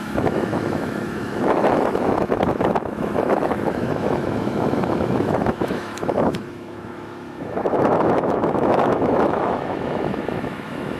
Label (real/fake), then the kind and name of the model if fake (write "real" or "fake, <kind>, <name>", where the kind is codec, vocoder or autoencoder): fake, autoencoder, DAC-VAE